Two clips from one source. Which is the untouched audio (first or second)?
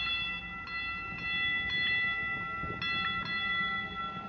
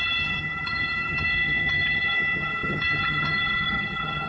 first